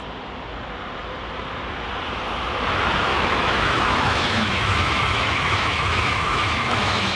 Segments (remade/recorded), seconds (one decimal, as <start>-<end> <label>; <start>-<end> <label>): 0.0-3.1 recorded; 3.1-7.2 remade